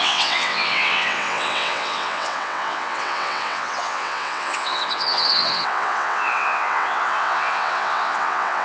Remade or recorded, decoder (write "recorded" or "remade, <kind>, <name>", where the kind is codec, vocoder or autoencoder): remade, vocoder, WaveNeXt